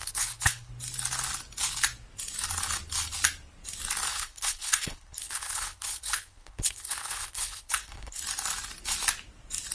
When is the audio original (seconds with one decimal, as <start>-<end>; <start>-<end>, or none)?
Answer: 0.7-4.1; 8.2-9.7